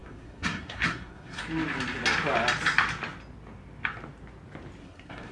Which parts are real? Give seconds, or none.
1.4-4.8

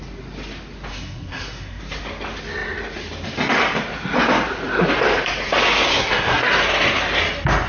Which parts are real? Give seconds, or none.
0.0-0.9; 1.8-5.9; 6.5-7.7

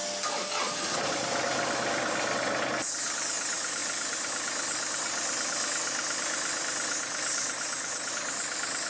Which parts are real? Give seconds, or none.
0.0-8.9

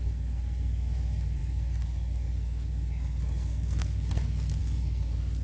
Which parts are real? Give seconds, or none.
none

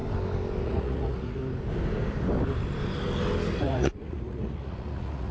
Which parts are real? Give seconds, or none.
0.0-0.6; 1.4-3.6